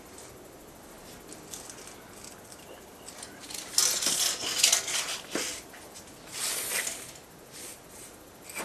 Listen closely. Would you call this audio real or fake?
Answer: real